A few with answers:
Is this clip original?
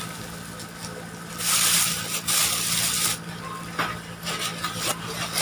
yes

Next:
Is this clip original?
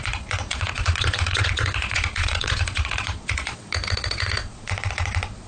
no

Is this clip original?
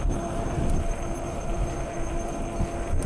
yes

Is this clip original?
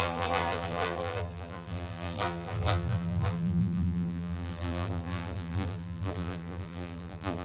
no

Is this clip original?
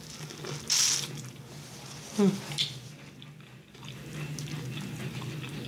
yes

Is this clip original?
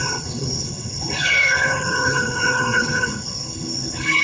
no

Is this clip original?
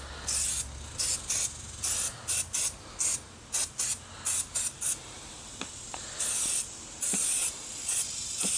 yes